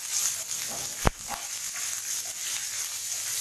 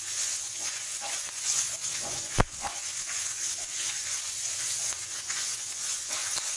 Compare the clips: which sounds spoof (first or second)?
second